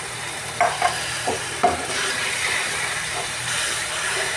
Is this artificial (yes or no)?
yes